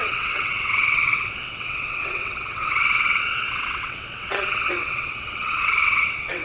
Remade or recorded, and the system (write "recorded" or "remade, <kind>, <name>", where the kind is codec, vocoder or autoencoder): remade, vocoder, WaveNeXt